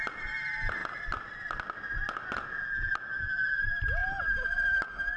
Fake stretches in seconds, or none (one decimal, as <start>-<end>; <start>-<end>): none